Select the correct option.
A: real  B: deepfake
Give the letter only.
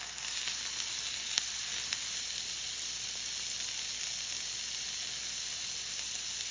A